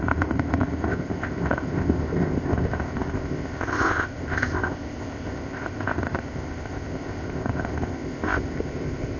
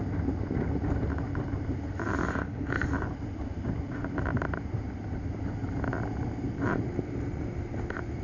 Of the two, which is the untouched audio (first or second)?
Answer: second